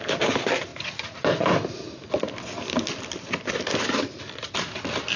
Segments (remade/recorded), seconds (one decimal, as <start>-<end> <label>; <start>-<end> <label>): 0.0-5.2 recorded